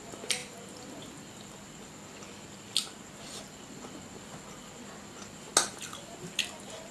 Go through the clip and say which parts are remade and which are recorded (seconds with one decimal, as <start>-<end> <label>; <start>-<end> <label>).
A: 0.0-6.9 recorded